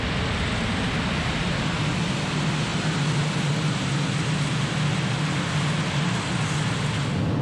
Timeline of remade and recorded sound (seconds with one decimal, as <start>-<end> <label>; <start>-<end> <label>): 0.0-7.4 recorded